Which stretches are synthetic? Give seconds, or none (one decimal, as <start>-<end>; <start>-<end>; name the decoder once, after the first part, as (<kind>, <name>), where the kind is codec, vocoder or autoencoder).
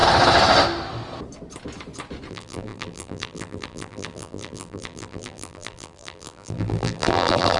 2.3-7.6 (vocoder, BigVGAN v2)